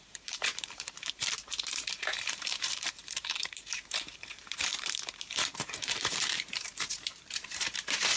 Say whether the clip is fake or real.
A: fake